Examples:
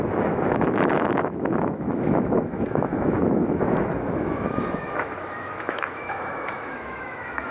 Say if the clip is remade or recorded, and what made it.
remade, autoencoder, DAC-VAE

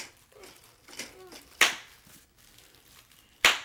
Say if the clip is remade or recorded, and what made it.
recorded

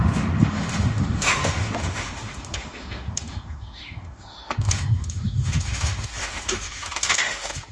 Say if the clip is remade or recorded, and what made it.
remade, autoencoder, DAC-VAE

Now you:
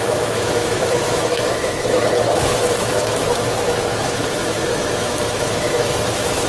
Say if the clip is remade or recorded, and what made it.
remade, autoencoder, DAC-VAE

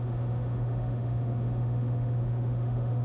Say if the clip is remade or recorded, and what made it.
remade, autoencoder, DAC-VAE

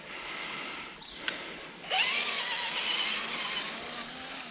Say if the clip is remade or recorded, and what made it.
recorded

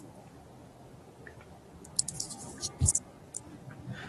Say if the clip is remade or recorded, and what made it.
recorded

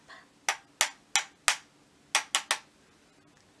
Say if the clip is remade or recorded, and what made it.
recorded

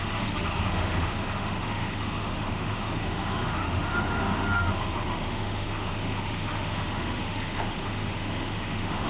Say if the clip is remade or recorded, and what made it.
remade, autoencoder, DAC-VAE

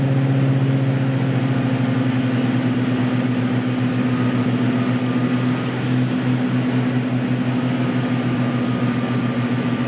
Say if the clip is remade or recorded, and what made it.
recorded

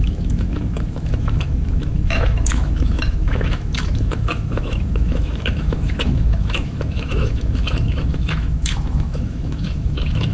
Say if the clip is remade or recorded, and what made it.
remade, autoencoder, DAC-VAE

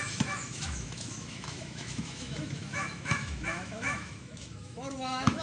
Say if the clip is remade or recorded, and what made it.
remade, autoencoder, DAC-VAE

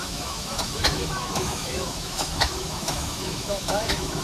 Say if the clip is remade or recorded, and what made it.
remade, autoencoder, DAC-VAE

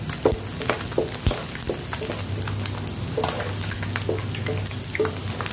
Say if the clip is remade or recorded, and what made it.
recorded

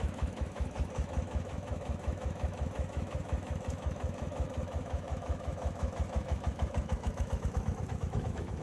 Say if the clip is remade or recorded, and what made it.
remade, autoencoder, DAC-VAE